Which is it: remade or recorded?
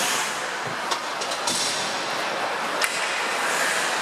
recorded